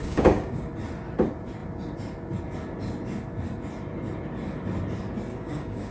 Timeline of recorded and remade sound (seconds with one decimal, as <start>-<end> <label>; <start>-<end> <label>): 0.0-0.7 remade; 0.7-5.3 recorded; 5.3-5.9 remade